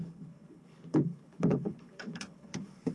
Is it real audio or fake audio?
fake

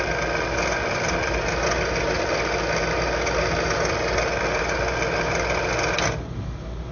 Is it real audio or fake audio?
real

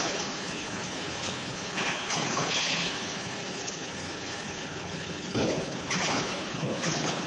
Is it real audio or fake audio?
fake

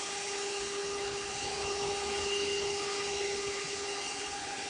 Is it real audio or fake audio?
fake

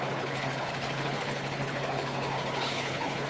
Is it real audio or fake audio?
fake